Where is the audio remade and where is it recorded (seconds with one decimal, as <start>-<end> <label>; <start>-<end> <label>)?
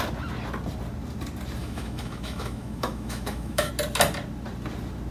0.0-1.6 recorded; 1.6-3.7 remade; 3.7-5.1 recorded